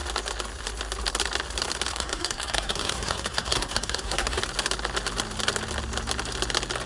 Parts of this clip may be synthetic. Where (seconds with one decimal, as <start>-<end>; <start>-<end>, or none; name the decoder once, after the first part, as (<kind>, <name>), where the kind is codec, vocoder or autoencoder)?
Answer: 1.9-4.4 (codec, SNAC)